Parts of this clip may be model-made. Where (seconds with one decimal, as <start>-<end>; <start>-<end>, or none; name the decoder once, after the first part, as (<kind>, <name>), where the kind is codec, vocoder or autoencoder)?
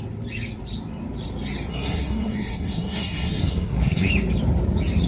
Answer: 1.7-4.1 (codec, SNAC)